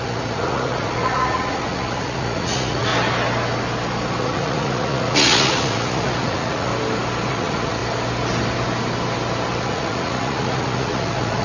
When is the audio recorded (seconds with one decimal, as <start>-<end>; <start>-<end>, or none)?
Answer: 2.9-4.2; 6.7-7.3; 7.8-9.5